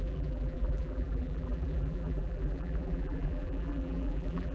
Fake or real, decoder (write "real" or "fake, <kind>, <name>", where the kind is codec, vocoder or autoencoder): fake, vocoder, BigVGAN v2